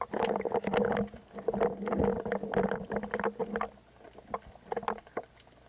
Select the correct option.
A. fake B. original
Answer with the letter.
B